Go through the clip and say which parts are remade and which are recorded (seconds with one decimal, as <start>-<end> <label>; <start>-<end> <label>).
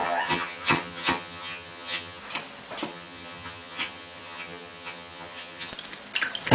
0.0-2.2 remade; 2.2-2.9 recorded; 2.9-5.7 remade; 5.7-6.5 recorded